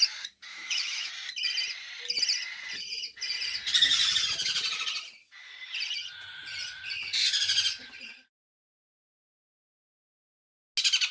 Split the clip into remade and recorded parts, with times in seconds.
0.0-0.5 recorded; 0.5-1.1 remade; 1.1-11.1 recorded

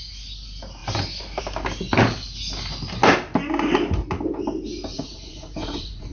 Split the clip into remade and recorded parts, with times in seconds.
0.0-4.9 recorded; 4.9-6.1 remade

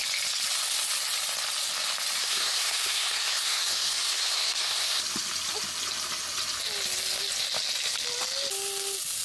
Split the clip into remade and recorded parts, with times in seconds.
0.0-2.2 recorded; 2.2-5.0 remade; 5.0-9.2 recorded

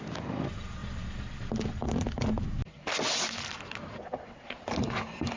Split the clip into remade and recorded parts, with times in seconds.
0.0-5.4 recorded